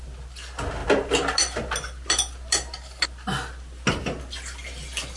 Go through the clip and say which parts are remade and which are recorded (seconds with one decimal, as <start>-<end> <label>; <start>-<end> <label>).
0.0-5.2 recorded